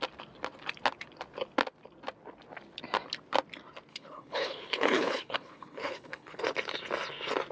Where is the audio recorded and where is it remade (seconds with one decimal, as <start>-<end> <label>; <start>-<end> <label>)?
0.0-3.9 recorded; 3.9-6.4 remade; 6.4-7.5 recorded